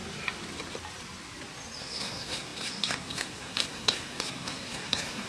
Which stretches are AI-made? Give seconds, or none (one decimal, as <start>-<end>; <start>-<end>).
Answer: 1.8-5.3